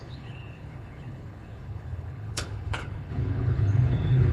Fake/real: fake